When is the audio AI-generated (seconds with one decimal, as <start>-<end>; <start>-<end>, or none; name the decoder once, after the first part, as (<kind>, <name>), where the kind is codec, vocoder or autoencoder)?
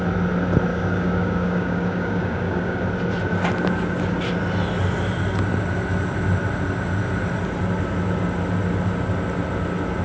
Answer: 0.7-2.8 (codec, DAC)